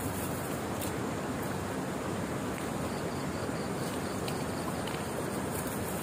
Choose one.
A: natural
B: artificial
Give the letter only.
A